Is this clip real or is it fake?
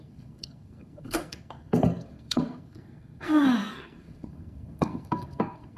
fake